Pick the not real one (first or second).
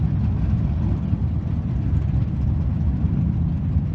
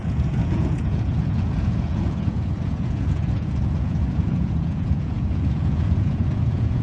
second